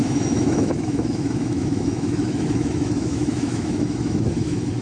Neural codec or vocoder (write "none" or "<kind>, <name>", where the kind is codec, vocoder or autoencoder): autoencoder, DAC-VAE